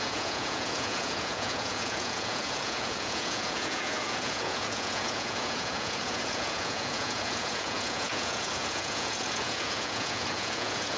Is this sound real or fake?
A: fake